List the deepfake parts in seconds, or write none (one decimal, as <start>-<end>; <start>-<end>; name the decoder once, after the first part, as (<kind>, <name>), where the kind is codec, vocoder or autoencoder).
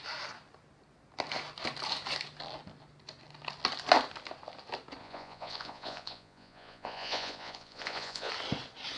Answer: 5.0-8.3 (vocoder, Vocos)